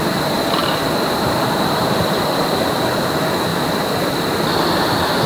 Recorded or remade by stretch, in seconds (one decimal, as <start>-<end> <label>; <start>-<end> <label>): 0.0-0.6 recorded; 0.6-2.9 remade; 2.9-3.5 recorded; 3.5-4.3 remade; 4.3-5.3 recorded